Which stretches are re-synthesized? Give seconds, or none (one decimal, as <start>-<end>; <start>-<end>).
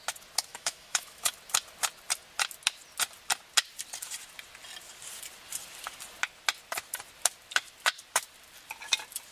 0.5-1.3